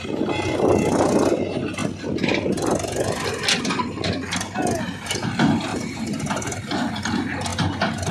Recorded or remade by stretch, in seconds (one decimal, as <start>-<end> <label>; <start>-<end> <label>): 0.0-5.7 recorded; 5.7-6.3 remade; 6.3-8.1 recorded